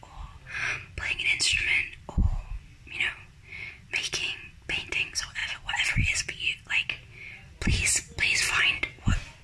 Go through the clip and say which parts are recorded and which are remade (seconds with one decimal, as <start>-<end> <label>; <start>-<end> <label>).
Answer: 0.0-9.4 recorded